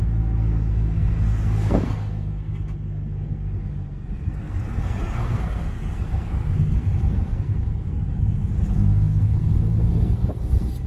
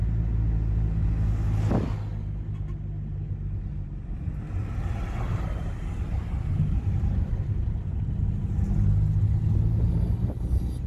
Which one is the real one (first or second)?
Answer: second